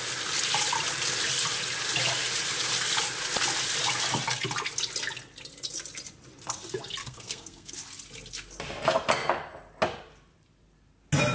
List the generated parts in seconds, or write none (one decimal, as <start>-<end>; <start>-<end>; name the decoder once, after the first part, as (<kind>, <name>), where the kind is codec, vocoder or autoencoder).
7.0-7.8 (codec, SNAC)